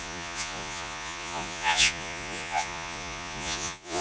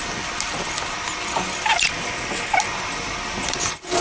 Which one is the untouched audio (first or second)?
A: second